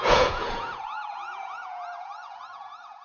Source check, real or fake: fake